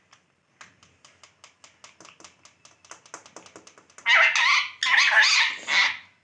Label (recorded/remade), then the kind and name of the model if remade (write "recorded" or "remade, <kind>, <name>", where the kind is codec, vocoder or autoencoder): recorded